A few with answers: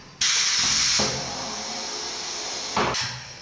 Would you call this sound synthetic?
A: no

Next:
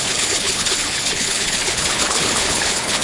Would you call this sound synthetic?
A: yes